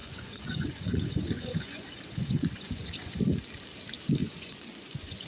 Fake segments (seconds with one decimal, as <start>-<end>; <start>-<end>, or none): 0.0-3.2; 4.2-5.3